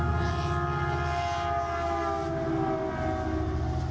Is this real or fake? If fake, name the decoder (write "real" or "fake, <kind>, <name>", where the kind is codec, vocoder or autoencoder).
real